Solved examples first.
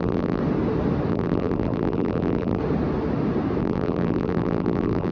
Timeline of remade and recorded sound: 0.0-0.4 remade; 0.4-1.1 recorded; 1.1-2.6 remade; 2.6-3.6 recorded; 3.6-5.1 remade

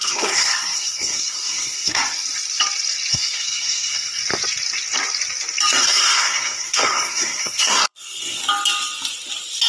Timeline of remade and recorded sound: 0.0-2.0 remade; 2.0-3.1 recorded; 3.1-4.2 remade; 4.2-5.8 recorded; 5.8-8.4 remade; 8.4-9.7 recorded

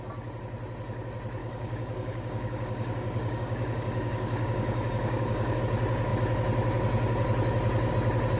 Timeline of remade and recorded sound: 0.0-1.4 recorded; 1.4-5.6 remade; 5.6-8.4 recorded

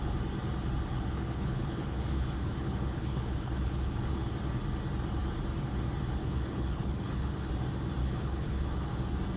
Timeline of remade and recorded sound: 0.0-0.9 recorded; 0.9-4.3 remade; 4.3-6.2 recorded; 6.2-7.5 remade; 7.5-8.0 recorded; 8.0-8.9 remade; 8.9-9.4 recorded

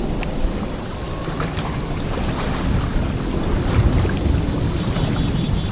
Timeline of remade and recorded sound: 0.0-2.9 remade; 2.9-3.4 recorded; 3.4-5.7 remade

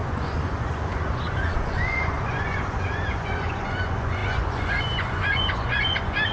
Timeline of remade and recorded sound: 0.0-6.3 remade